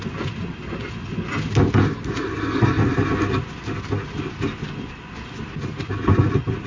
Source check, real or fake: real